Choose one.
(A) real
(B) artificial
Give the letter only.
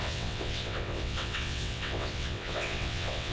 B